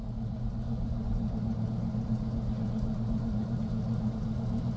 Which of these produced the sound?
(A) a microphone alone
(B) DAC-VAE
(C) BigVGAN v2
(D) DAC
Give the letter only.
C